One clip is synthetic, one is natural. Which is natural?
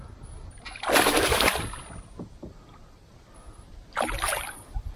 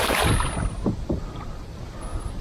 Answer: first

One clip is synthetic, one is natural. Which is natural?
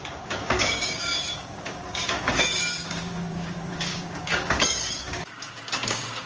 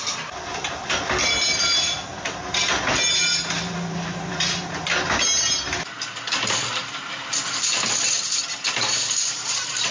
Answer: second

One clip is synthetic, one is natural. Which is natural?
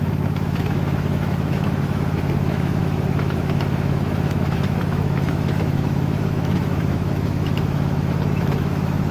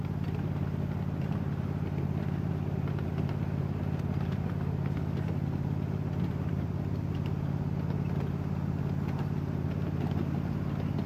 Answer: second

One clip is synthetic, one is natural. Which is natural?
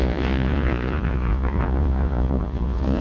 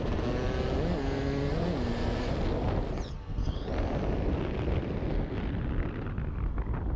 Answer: second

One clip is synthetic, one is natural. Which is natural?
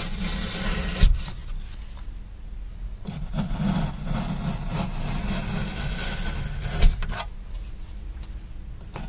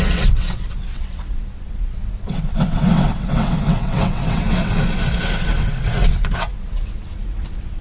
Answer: first